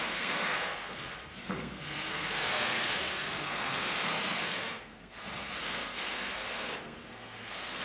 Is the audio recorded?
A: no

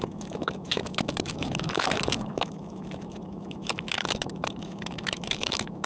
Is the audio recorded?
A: no